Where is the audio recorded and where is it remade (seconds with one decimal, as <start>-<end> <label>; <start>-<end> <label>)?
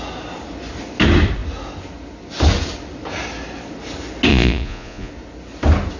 0.0-4.3 recorded; 4.3-5.1 remade; 5.1-6.0 recorded